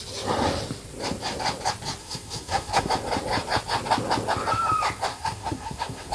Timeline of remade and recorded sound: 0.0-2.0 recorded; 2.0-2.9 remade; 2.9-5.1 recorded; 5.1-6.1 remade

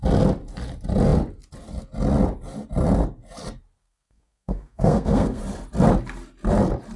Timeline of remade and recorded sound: 0.0-3.8 recorded; 3.8-5.4 remade; 5.4-7.0 recorded

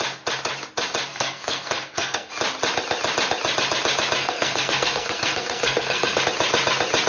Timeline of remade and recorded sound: 0.0-1.1 recorded; 1.1-2.3 remade; 2.3-4.2 recorded; 4.2-6.2 remade; 6.2-7.1 recorded

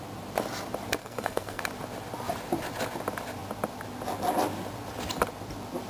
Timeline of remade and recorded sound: 0.0-1.0 recorded; 1.0-1.6 remade; 1.6-5.9 recorded

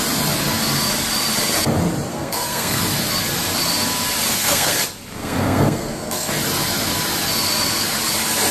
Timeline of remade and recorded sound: 0.0-2.1 recorded; 2.1-2.8 remade; 2.8-4.3 recorded; 4.3-4.8 remade; 4.8-5.2 recorded; 5.2-6.3 remade; 6.3-8.5 recorded

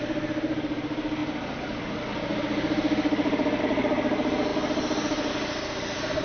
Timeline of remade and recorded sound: 0.0-6.2 recorded

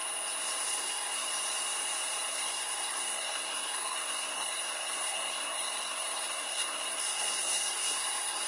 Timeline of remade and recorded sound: 0.0-0.6 recorded; 0.6-1.3 remade; 1.3-2.3 recorded; 2.3-8.5 remade